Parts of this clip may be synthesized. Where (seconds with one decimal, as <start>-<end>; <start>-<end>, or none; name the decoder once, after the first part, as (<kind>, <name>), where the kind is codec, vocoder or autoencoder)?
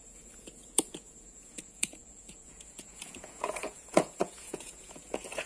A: 0.0-5.5 (vocoder, Vocos)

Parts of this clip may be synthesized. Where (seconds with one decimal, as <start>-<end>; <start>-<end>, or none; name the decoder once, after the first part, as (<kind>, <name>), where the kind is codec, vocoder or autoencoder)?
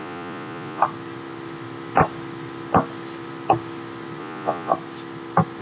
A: 0.0-0.8 (vocoder, Vocos); 4.2-4.7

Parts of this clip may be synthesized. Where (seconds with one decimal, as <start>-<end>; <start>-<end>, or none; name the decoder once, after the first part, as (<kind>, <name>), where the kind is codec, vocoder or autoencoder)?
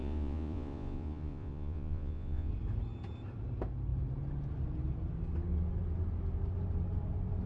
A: 0.0-2.5 (vocoder, Vocos)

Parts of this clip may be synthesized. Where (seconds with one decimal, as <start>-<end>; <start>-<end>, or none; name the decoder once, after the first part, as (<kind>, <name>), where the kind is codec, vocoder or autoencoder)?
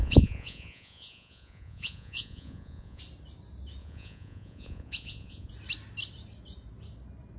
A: 0.0-3.0 (vocoder, Vocos); 3.8-5.5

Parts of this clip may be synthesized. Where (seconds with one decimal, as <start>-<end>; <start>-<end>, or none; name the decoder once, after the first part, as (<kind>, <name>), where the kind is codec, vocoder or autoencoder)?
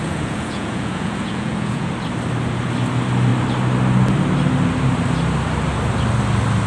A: 0.0-1.9 (vocoder, Vocos)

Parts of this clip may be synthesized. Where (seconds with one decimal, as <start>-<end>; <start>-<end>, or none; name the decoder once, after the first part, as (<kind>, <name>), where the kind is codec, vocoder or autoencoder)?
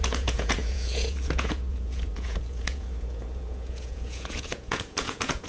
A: 0.0-5.5 (vocoder, Vocos)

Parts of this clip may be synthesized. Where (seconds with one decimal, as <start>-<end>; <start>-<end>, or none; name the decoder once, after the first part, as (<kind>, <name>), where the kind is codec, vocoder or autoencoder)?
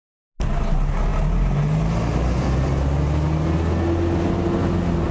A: none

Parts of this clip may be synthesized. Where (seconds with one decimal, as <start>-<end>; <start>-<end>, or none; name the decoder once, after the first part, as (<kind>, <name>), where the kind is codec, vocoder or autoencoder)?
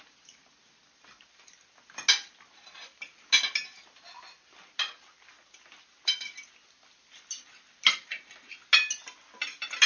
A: none